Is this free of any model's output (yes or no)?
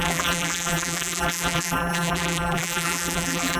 no